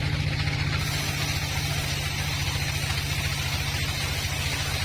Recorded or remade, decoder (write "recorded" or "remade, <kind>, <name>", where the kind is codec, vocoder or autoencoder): recorded